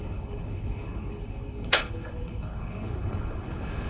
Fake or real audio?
fake